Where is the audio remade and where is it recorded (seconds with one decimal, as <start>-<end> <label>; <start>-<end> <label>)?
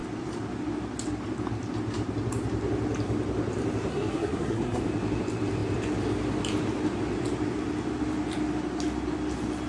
0.0-3.9 recorded; 3.9-4.8 remade; 4.8-9.7 recorded